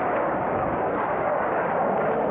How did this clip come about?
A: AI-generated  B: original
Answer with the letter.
A